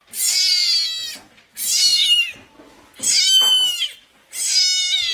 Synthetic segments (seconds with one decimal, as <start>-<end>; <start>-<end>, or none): none